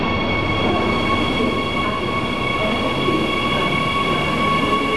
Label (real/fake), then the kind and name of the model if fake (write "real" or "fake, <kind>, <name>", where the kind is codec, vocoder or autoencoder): real